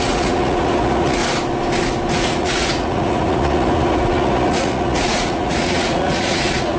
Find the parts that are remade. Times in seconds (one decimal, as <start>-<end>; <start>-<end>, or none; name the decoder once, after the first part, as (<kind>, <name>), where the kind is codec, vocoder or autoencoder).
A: 0.0-1.2 (vocoder, Vocos); 2.2-6.8